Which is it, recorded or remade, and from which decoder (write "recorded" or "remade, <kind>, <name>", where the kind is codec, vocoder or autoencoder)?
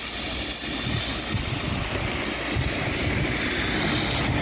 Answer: recorded